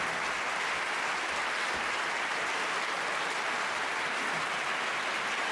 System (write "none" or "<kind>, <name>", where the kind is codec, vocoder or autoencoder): none